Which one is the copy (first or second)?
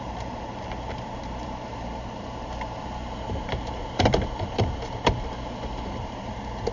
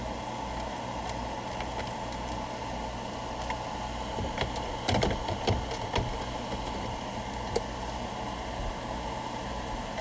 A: first